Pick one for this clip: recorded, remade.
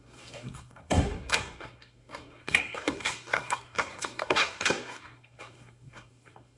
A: remade